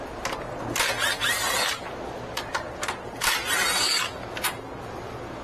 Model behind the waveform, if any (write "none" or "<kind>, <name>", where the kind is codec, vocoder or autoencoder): none